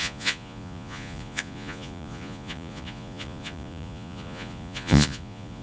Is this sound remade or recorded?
remade